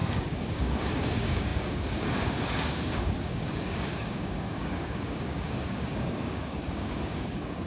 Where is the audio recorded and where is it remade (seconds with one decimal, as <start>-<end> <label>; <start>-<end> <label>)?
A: 0.0-7.7 remade